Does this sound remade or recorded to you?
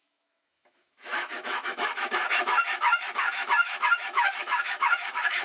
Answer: remade